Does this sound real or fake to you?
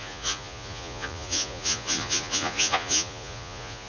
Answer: fake